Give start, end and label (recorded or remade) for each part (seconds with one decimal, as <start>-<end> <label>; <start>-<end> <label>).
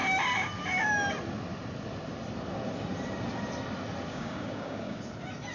0.0-4.1 recorded; 4.1-5.0 remade; 5.0-5.5 recorded